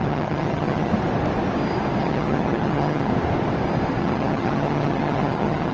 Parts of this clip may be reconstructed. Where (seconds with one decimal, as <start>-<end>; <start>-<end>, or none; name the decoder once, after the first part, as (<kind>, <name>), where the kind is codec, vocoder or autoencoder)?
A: 0.0-0.9 (vocoder, HiFi-GAN); 2.0-3.1; 4.0-5.7